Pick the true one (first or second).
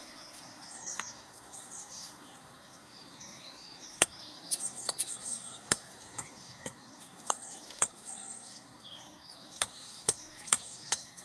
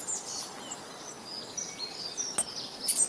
second